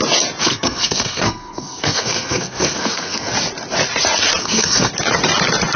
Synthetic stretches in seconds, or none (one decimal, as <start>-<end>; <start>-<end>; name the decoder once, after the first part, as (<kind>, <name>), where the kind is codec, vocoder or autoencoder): 0.4-3.3 (codec, SNAC); 4.4-4.9